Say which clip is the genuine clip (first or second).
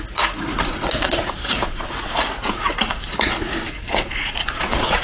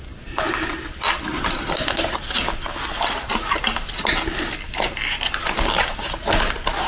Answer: second